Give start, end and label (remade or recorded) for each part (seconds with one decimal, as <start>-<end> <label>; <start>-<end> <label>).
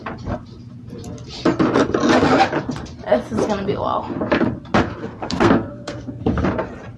0.0-5.0 recorded; 5.0-6.2 remade; 6.2-7.0 recorded